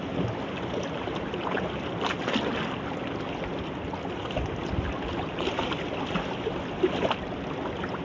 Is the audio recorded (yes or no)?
yes